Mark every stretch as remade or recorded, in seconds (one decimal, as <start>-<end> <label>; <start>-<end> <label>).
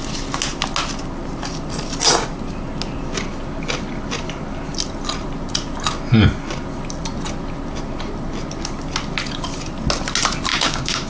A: 0.0-10.5 recorded; 10.5-11.1 remade